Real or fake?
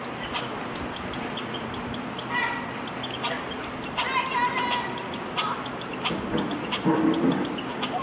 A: real